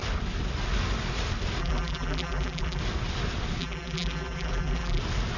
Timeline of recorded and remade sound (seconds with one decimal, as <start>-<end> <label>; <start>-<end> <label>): 0.0-1.6 recorded; 1.6-2.8 remade; 2.8-3.6 recorded; 3.6-5.0 remade; 5.0-5.4 recorded

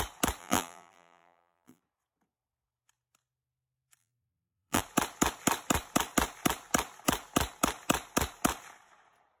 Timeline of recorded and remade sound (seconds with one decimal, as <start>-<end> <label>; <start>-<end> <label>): 0.0-0.4 recorded; 0.4-1.8 remade; 1.8-4.0 recorded; 4.0-4.8 remade; 4.8-9.4 recorded

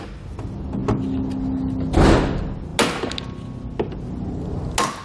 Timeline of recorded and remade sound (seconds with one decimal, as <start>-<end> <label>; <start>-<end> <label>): 0.0-5.0 recorded

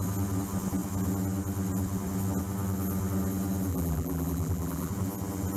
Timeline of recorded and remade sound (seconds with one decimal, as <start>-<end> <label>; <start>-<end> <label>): 0.0-3.7 recorded; 3.7-4.9 remade; 4.9-5.6 recorded

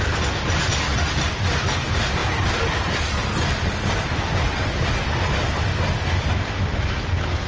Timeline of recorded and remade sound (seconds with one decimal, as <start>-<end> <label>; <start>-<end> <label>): 0.0-7.5 remade

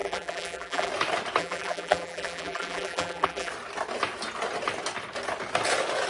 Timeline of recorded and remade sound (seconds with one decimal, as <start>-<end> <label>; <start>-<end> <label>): 0.0-0.9 remade; 0.9-1.4 recorded; 1.4-3.5 remade; 3.5-6.1 recorded